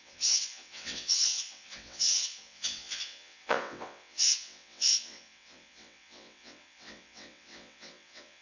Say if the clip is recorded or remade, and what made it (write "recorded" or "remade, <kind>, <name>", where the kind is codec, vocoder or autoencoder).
remade, vocoder, WaveNeXt